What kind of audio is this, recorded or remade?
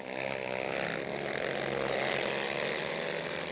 recorded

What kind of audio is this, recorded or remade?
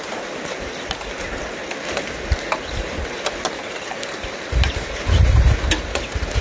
recorded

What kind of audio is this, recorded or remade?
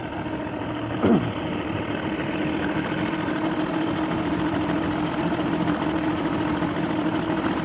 recorded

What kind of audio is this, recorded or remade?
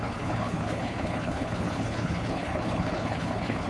remade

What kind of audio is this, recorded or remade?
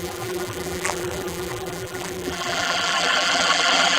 remade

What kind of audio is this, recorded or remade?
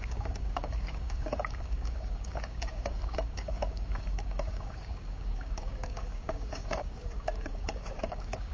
remade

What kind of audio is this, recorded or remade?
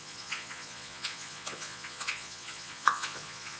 remade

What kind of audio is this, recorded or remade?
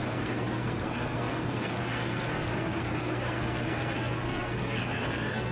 remade